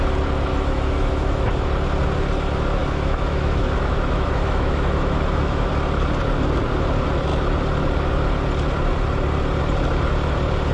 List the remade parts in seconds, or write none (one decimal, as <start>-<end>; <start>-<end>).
0.5-1.5; 2.8-5.7